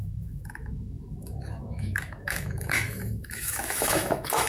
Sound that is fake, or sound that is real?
fake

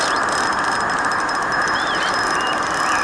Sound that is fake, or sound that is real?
real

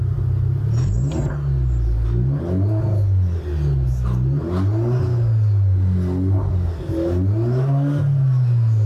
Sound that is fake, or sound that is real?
real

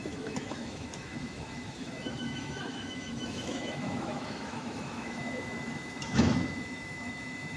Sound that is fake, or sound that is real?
fake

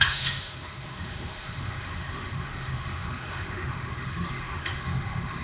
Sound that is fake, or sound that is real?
fake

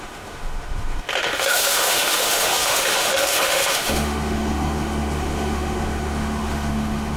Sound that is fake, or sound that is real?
fake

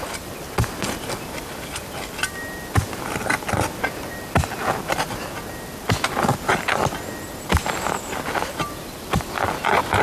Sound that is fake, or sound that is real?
real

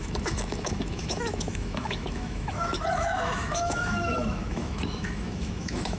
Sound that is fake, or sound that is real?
fake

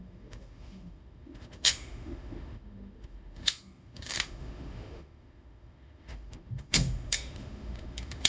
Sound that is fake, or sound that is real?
fake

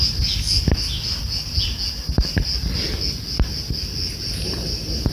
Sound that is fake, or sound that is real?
real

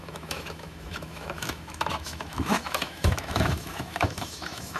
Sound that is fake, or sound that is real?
fake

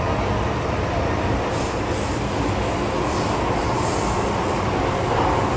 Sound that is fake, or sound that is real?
real